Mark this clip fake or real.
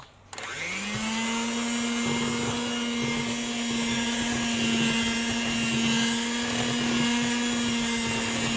real